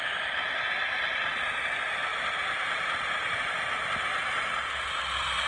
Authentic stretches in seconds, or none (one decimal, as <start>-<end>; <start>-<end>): 0.0-5.5